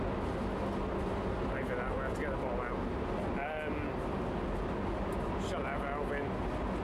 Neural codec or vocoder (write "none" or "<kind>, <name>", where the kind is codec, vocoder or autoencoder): none